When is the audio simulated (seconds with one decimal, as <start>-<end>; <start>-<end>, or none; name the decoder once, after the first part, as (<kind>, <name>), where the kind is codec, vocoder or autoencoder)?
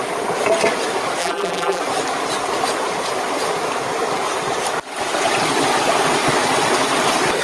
1.2-1.8 (vocoder, BigVGAN v2)